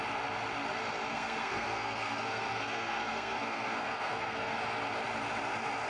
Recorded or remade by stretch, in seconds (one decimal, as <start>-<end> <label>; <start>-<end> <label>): 0.0-1.1 recorded; 1.1-4.6 remade; 4.6-5.9 recorded